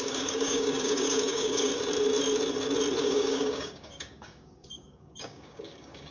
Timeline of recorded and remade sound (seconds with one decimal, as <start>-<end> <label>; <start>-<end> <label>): 0.0-1.7 remade; 1.7-3.0 recorded; 3.0-6.1 remade